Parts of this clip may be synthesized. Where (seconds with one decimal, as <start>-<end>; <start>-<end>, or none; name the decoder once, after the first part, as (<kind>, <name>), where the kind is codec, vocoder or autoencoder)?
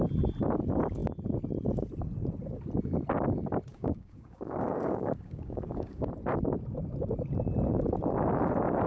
3.7-6.1 (codec, DAC)